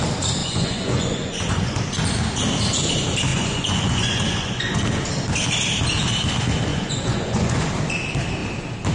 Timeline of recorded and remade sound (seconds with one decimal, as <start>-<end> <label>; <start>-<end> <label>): 0.0-0.4 recorded; 0.4-1.8 remade; 1.8-3.3 recorded; 3.3-4.8 remade; 4.8-6.7 recorded; 6.7-7.7 remade; 7.7-8.9 recorded